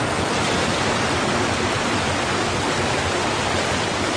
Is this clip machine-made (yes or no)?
no